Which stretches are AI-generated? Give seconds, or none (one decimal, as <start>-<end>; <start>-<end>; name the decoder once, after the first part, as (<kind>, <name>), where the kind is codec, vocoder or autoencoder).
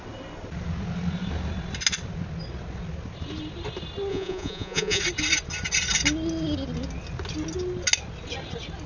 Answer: 4.1-5.0 (vocoder, Vocos)